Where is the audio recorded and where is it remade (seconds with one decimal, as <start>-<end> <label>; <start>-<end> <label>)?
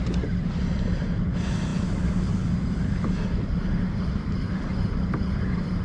0.0-5.8 recorded